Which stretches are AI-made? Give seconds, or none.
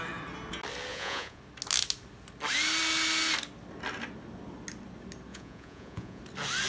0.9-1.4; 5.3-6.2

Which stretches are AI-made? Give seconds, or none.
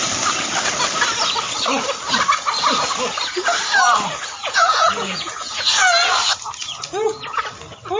4.4-5.9; 6.6-7.4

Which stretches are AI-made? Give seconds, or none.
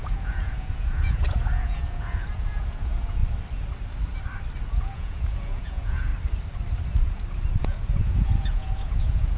0.0-3.2; 4.7-6.1; 7.6-9.4